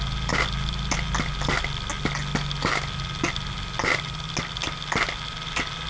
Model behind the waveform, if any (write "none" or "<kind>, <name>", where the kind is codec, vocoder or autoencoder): none